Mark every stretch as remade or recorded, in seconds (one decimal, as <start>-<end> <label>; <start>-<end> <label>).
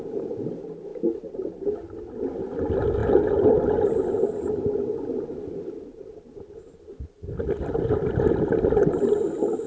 0.0-9.7 recorded